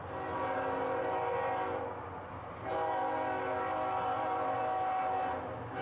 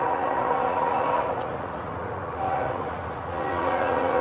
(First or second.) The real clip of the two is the first